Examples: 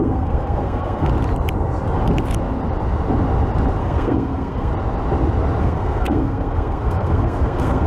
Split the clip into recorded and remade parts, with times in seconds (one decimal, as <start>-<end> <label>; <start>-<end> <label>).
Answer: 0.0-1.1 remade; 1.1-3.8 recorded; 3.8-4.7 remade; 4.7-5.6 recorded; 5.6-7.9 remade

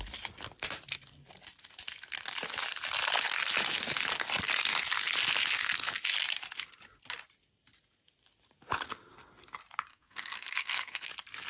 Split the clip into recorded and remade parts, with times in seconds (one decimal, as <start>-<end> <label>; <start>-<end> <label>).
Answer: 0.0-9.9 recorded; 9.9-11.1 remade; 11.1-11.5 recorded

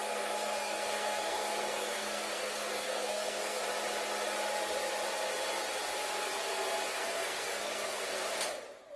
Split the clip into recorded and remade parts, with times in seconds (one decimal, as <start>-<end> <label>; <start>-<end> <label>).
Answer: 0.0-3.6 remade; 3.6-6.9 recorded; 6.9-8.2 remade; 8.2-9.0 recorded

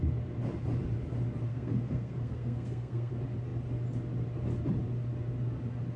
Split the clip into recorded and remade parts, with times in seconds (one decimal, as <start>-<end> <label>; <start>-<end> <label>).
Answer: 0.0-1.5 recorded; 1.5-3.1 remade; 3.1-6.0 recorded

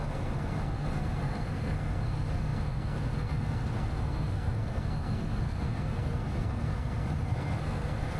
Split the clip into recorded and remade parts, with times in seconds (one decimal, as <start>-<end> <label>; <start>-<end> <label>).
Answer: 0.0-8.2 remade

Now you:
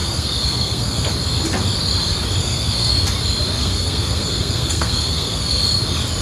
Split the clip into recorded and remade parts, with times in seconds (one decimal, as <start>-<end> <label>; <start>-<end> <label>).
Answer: 0.0-1.1 remade; 1.1-2.4 recorded; 2.4-2.9 remade; 2.9-3.6 recorded; 3.6-5.6 remade; 5.6-6.2 recorded

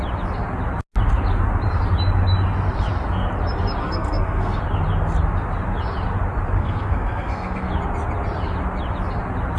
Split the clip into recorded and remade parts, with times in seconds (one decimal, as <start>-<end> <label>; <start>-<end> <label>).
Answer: 0.0-3.8 recorded; 3.8-4.6 remade; 4.6-6.6 recorded; 6.6-7.7 remade; 7.7-9.6 recorded